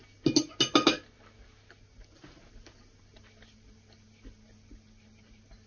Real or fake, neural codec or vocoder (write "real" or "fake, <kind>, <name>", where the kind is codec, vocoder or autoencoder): real